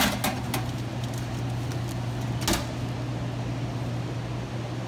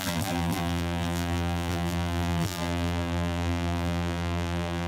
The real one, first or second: first